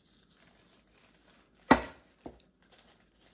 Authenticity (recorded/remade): recorded